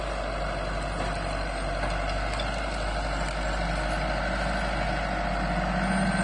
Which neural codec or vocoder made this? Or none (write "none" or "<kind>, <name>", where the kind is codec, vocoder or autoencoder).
none